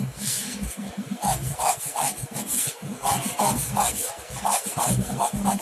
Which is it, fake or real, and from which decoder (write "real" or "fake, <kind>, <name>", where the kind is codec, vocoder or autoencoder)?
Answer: fake, codec, SNAC